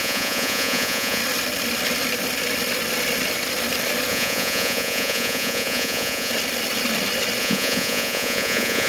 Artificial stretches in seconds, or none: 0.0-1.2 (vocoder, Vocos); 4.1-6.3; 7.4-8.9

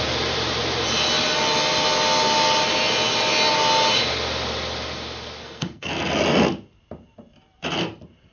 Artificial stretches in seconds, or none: 5.4-5.9 (codec, SNAC)

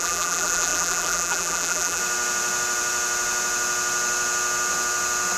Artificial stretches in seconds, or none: 0.0-2.0 (vocoder, BigVGAN v2)

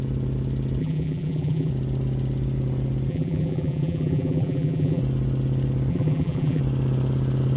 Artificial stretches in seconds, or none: 0.8-1.7 (vocoder, BigVGAN v2); 3.1-5.0; 5.9-6.6

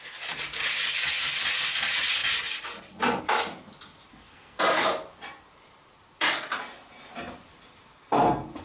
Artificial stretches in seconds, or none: 4.1-4.6 (codec, SNAC)

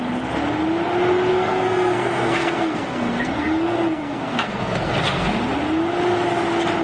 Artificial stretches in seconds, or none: 1.3-5.4 (codec, SNAC)

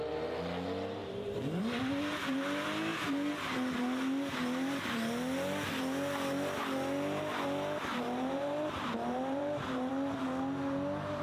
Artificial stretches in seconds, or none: 1.0-1.6 (vocoder, BigVGAN v2); 7.9-9.9

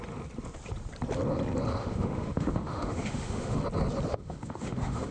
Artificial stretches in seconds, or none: 1.8-3.6 (autoencoder, DAC-VAE); 4.1-5.1